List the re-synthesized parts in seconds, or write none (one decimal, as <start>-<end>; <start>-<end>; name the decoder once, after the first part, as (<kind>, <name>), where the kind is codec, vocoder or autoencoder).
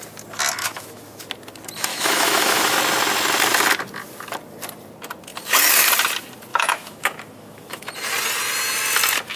0.6-1.3 (autoencoder, DAC-VAE); 1.9-2.8; 6.5-7.9